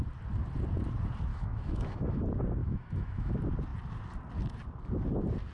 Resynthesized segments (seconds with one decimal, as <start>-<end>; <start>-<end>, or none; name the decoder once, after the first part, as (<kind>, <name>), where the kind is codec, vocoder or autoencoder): 1.3-2.2 (autoencoder, DAC-VAE); 2.6-3.3